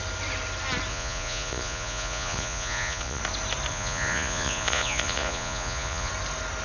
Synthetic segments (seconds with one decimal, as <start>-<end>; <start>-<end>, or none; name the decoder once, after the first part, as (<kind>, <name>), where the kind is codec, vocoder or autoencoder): 0.9-3.2 (vocoder, Vocos); 3.7-6.1